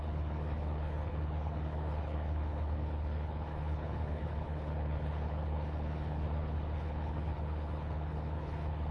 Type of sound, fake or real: fake